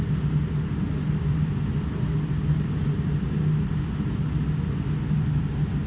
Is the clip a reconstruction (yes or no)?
no